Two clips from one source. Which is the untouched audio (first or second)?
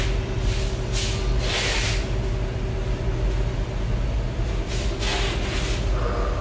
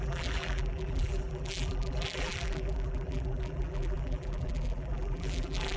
first